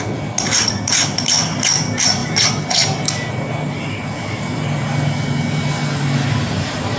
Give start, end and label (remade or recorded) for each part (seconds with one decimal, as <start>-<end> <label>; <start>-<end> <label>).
0.0-7.0 recorded